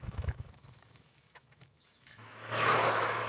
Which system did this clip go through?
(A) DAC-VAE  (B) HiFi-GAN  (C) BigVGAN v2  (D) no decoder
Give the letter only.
A